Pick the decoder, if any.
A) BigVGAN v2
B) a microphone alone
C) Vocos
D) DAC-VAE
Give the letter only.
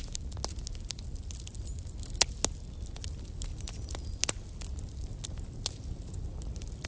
B